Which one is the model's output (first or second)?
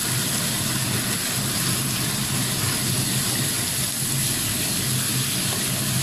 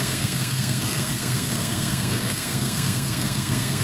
second